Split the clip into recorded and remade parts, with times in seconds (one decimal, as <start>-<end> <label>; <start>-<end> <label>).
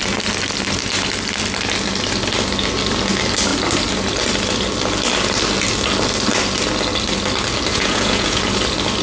0.0-7.7 recorded; 7.7-8.4 remade; 8.4-9.0 recorded